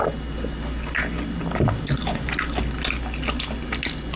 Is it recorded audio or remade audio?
recorded